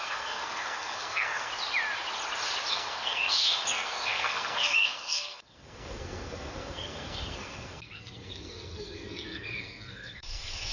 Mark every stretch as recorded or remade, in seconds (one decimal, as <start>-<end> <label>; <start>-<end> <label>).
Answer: 0.0-1.5 remade; 1.5-2.7 recorded; 2.7-10.7 remade